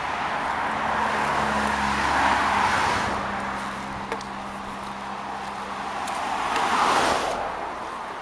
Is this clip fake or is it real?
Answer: real